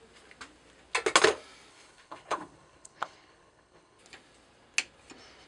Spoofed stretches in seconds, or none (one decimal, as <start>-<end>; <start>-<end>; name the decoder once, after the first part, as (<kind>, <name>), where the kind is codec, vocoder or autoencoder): 1.7-4.0 (codec, HILCodec)